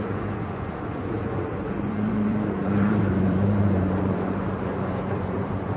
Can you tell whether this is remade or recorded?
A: remade